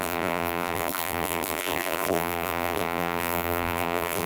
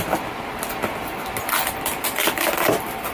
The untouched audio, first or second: second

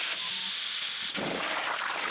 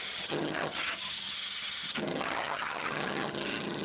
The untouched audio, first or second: first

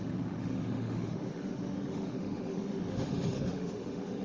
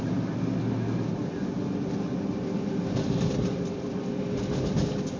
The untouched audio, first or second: second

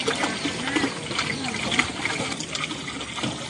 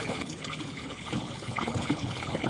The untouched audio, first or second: first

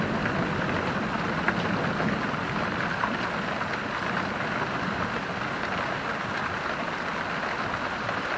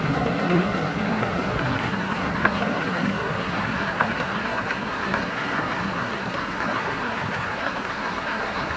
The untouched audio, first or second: first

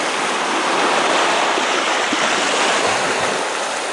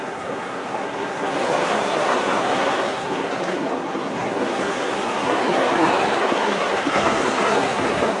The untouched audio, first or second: first